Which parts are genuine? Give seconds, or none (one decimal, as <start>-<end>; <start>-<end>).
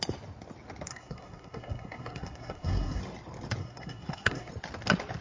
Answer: 0.0-0.9; 3.0-3.6; 4.5-5.2